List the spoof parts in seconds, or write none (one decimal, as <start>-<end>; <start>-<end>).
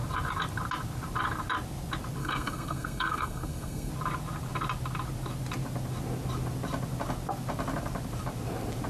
2.2-3.9